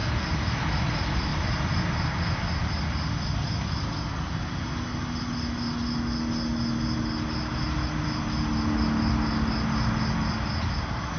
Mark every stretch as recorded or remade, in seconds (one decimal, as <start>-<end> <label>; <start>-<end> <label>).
0.0-11.2 recorded